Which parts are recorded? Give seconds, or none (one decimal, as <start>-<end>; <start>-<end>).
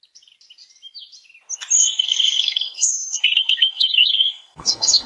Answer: 0.0-1.8